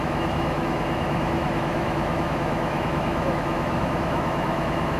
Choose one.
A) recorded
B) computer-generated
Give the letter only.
B